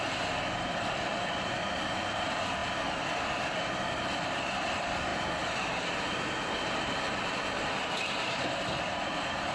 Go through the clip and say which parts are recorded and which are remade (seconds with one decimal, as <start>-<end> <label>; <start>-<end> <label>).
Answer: 0.0-2.6 remade; 2.6-3.8 recorded; 3.8-5.1 remade; 5.1-6.6 recorded; 6.6-9.5 remade